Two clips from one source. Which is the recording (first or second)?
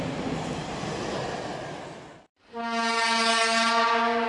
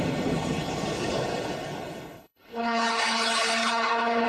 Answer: first